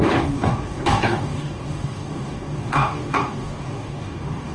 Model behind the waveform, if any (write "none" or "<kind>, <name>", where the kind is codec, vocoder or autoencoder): codec, DAC